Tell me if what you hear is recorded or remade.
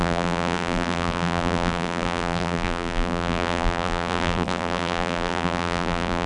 remade